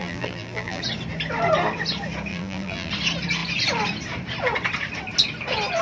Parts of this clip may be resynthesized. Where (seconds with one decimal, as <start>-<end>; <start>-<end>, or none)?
0.0-0.8; 2.3-2.9